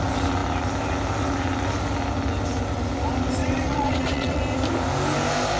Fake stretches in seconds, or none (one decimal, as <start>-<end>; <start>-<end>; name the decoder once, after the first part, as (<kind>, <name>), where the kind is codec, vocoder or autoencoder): 3.4-4.4 (vocoder, WaveNeXt)